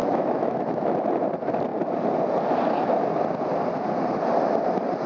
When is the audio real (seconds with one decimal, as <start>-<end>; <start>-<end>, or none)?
0.9-5.1